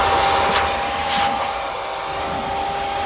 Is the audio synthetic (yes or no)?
no